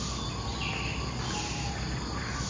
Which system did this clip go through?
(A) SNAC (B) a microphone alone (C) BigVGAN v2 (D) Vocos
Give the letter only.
B